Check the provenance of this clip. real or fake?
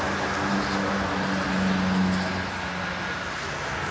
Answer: real